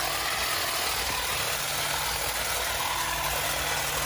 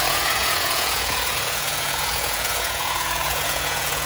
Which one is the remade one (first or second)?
second